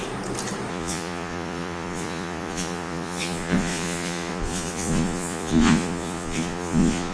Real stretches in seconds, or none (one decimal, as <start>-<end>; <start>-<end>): 0.0-0.7